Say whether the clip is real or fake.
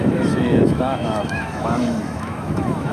fake